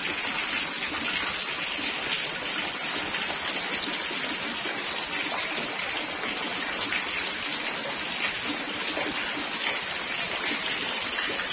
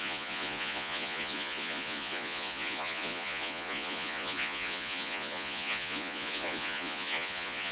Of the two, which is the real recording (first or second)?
first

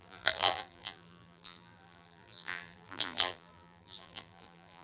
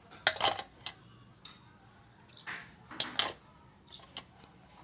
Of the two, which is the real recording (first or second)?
second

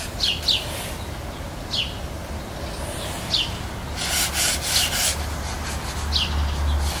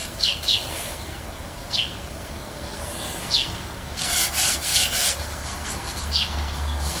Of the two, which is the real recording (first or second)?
first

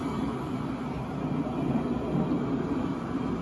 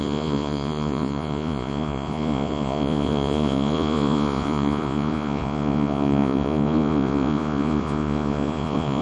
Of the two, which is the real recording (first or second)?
first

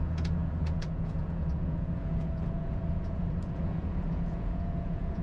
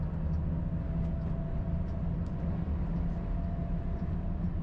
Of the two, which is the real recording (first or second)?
second